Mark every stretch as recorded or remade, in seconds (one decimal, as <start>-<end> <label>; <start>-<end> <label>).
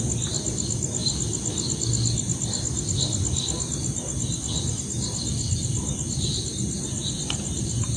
0.0-8.0 recorded